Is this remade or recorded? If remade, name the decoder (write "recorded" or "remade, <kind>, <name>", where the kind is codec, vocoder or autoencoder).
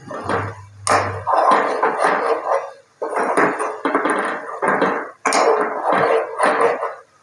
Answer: recorded